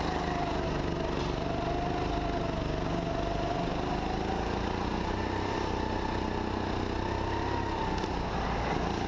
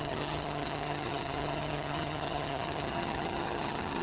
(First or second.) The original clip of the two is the first